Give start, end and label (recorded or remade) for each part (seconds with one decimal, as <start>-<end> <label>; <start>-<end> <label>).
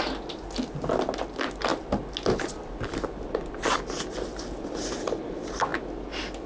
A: 0.0-6.5 recorded